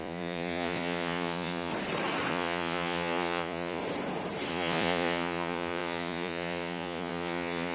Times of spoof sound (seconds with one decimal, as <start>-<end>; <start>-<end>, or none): 0.0-1.7; 2.3-3.8; 4.5-7.7